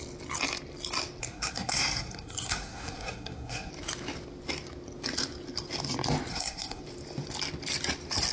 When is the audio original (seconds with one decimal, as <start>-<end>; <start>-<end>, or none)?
0.0-1.2; 3.7-6.3; 6.8-8.3